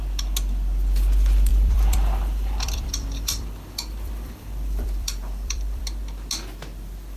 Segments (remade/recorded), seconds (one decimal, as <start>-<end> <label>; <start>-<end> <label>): 0.0-1.5 recorded; 1.5-5.8 remade; 5.8-7.2 recorded

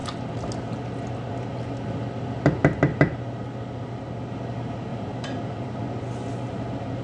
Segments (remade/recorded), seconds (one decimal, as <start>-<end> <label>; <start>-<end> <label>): 0.0-4.9 recorded; 4.9-5.8 remade; 5.8-7.0 recorded